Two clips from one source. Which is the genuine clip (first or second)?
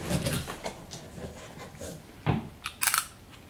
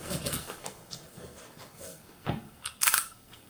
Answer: first